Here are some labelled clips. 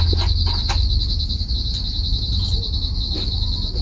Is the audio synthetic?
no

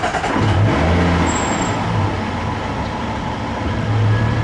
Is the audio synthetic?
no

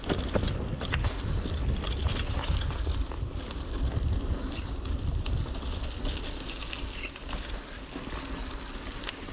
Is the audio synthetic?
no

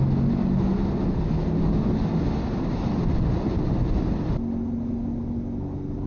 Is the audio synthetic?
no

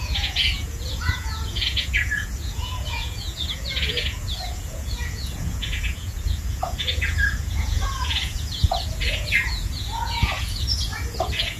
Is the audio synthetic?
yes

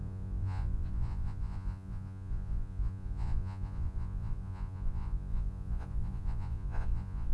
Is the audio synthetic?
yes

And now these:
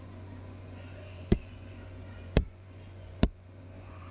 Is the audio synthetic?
yes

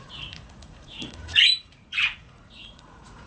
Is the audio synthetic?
yes